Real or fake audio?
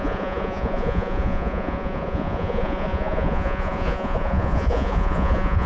fake